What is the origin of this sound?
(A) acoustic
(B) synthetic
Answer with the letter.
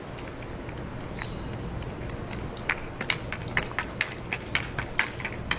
A